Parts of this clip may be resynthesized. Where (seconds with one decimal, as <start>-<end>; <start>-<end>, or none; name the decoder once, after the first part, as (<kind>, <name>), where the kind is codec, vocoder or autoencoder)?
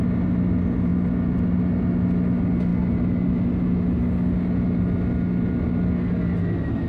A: none